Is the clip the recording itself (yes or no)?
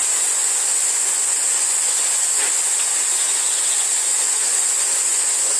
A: no